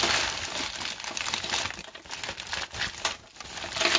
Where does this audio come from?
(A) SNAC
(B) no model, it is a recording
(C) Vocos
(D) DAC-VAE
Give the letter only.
B